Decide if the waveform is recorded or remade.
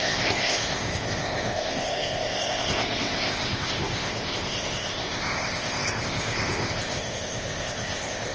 remade